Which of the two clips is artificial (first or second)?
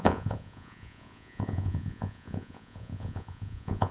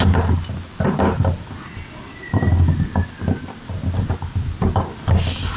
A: first